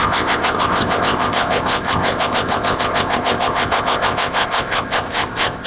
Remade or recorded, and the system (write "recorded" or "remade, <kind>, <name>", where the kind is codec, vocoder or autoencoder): remade, codec, ZipCodec